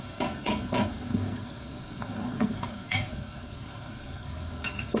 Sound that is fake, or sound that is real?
fake